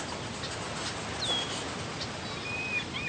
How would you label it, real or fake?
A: real